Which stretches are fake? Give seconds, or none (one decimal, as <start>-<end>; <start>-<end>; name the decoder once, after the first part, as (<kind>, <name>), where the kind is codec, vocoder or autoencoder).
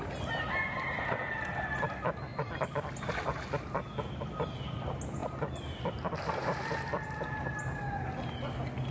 none